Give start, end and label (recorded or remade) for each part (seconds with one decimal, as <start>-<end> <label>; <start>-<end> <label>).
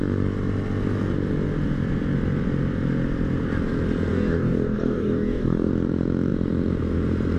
0.0-4.1 recorded; 4.1-5.7 remade; 5.7-7.4 recorded